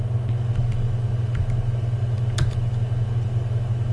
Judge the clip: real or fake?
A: real